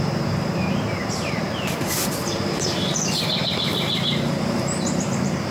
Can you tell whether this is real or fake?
fake